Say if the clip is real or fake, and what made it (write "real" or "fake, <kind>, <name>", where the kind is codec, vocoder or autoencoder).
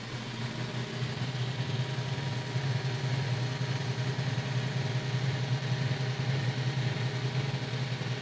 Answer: real